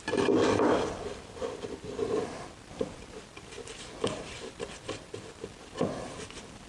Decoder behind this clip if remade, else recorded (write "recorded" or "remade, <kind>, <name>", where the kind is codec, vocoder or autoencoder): remade, vocoder, BigVGAN v2